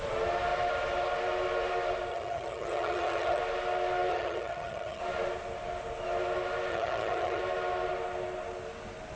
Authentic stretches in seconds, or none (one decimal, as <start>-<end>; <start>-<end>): 0.0-2.1; 3.4-4.1; 5.0-6.7; 7.4-9.2